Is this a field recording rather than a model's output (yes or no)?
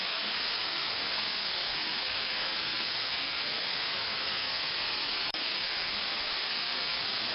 no